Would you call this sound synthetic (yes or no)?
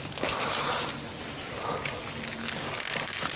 no